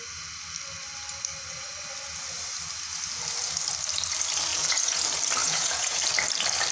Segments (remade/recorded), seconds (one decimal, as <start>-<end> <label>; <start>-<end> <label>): 0.0-4.5 recorded; 4.5-5.0 remade; 5.0-5.4 recorded; 5.4-6.0 remade; 6.0-6.7 recorded